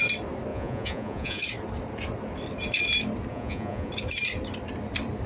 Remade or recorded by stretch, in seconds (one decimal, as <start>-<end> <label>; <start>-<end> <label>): 0.0-0.5 recorded; 0.5-1.4 remade; 1.4-3.3 recorded; 3.3-3.9 remade; 3.9-5.3 recorded